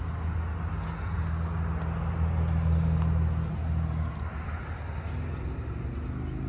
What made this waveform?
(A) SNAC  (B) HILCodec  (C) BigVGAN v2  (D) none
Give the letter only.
D